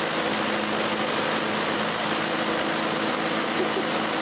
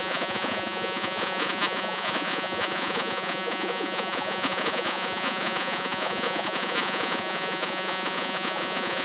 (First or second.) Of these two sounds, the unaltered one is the first